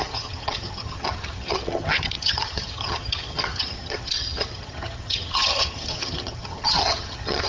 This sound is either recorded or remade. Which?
remade